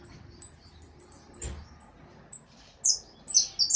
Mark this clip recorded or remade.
recorded